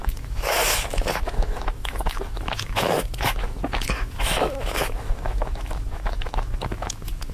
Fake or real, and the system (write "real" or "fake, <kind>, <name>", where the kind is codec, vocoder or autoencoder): fake, autoencoder, DAC-VAE